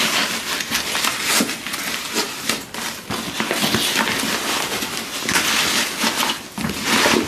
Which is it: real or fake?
real